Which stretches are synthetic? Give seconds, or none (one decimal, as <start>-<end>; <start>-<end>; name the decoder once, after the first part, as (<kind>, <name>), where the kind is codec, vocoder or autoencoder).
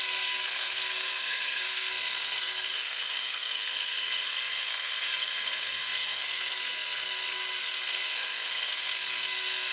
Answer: 0.0-9.7 (codec, SNAC)